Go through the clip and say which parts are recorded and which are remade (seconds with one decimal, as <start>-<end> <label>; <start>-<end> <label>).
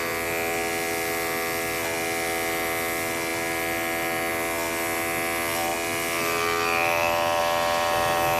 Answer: 0.0-8.4 recorded